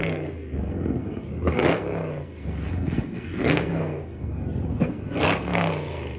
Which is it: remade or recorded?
remade